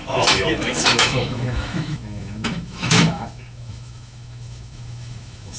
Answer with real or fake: fake